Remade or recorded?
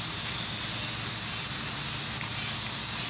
recorded